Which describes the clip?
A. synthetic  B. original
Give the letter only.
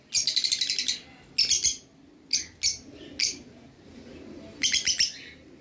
B